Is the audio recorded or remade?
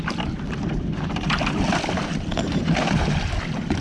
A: remade